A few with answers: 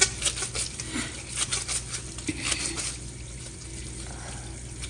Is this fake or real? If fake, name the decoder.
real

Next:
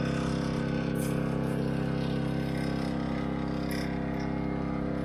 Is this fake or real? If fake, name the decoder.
real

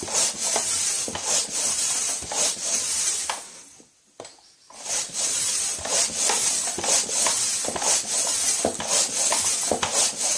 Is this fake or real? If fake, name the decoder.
real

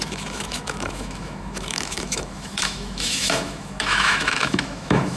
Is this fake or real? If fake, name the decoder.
fake, autoencoder, DAC-VAE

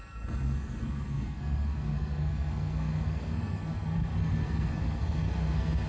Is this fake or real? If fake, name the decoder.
fake, codec, SNAC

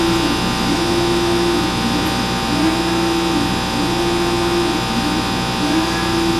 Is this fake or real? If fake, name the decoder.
real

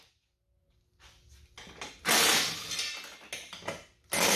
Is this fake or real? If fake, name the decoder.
real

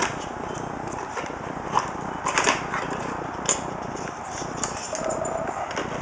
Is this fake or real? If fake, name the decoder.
real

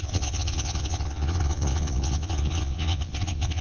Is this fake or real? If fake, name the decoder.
fake, vocoder, Vocos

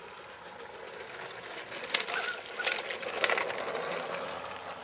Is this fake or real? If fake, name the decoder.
real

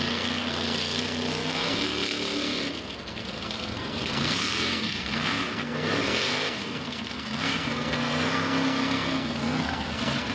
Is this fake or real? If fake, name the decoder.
fake, codec, SNAC